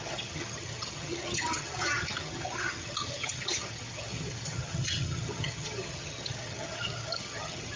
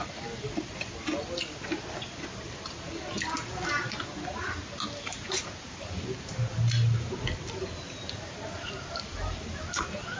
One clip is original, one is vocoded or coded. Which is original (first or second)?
second